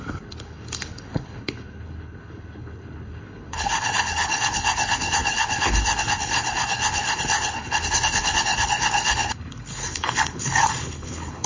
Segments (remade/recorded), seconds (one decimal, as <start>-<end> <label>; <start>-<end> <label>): 0.0-11.5 remade